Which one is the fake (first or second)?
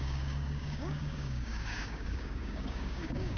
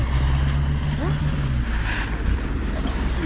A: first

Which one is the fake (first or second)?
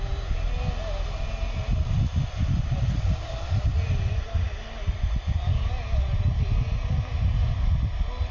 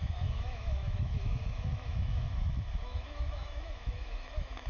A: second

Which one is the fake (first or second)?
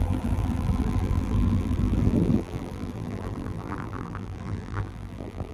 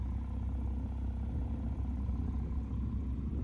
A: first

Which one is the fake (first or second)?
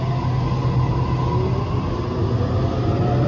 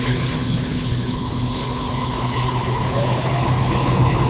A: second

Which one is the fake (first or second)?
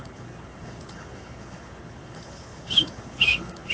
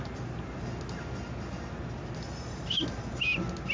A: first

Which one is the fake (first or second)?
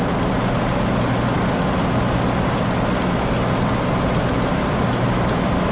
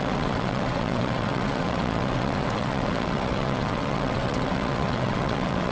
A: second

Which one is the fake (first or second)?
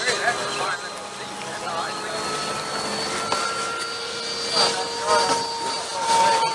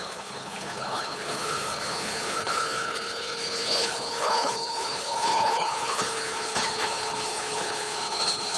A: second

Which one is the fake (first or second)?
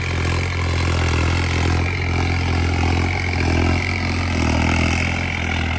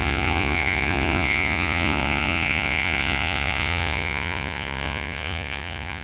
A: second